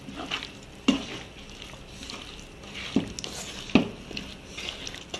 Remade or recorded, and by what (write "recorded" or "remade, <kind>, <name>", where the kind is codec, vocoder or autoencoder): recorded